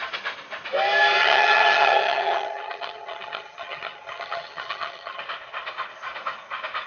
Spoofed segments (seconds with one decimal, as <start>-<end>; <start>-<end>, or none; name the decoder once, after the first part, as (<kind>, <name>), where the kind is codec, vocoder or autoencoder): 1.2-5.2 (vocoder, HiFi-GAN)